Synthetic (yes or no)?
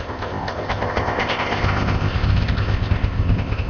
yes